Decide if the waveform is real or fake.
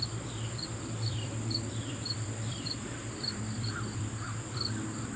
fake